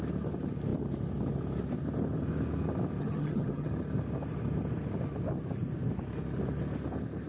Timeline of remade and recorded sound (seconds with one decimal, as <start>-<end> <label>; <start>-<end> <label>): 0.0-3.0 recorded; 3.0-3.7 remade; 3.7-7.3 recorded